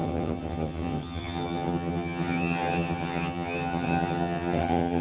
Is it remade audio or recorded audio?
remade